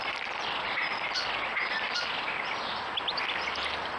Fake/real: real